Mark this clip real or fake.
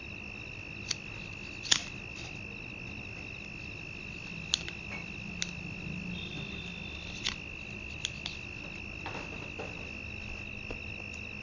real